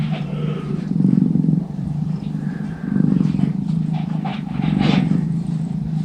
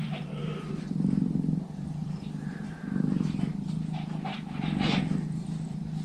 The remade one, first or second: first